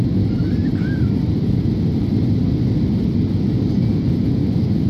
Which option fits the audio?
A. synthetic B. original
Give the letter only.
B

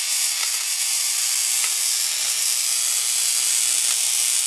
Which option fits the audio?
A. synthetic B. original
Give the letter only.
B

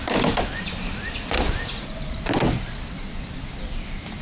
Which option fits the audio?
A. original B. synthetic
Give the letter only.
A